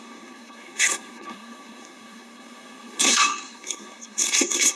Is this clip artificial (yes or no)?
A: yes